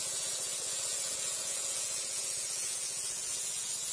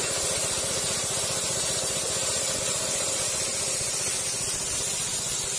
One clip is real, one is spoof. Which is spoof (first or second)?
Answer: first